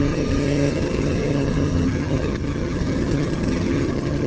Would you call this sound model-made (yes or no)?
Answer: yes